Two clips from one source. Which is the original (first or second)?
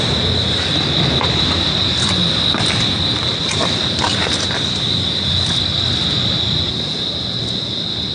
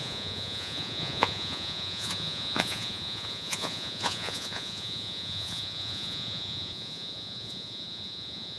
first